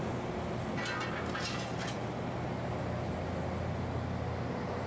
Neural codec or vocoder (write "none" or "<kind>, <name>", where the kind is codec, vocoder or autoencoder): none